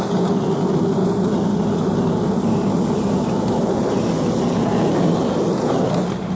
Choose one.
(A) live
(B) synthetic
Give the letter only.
A